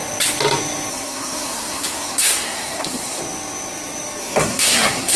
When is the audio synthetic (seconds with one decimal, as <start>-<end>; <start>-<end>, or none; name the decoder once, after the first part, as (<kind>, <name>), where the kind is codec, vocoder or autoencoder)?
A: 0.9-3.2 (codec, SNAC); 4.2-5.2